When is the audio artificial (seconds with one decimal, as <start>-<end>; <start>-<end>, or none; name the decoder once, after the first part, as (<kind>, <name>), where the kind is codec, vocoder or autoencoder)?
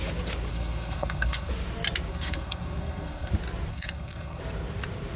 0.5-1.5 (codec, SNAC); 2.1-3.3; 3.7-4.4